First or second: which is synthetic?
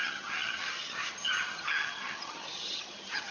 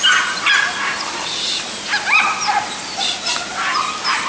first